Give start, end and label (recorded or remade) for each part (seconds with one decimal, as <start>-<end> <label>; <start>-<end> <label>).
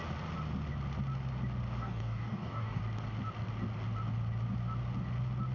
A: 0.0-1.8 recorded; 1.8-2.8 remade; 2.8-5.5 recorded